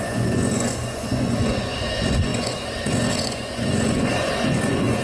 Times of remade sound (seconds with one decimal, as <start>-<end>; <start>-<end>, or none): 0.0-5.0